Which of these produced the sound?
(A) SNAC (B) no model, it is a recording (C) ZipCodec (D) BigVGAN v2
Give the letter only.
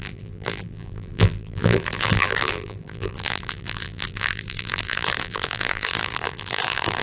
D